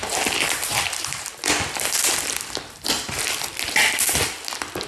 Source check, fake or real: real